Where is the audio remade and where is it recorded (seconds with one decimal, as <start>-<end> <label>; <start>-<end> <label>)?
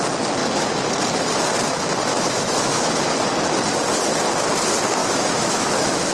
0.0-2.1 recorded; 2.1-3.0 remade; 3.0-5.0 recorded; 5.0-6.1 remade